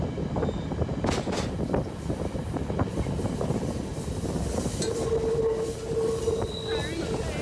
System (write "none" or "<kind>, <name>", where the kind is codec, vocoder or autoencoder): none